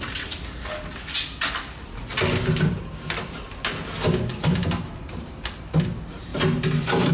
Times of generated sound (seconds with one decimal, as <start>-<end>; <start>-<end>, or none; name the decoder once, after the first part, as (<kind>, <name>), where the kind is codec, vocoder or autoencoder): 4.3-5.3 (vocoder, BigVGAN v2); 6.3-7.1